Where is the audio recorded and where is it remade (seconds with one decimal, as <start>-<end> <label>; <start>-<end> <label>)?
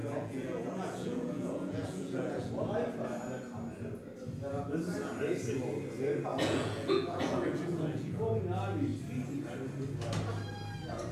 0.0-2.5 remade; 2.5-6.3 recorded; 6.3-8.4 remade; 8.4-11.1 recorded